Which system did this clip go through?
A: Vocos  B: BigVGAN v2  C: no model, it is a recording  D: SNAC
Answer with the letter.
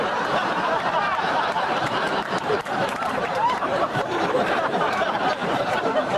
B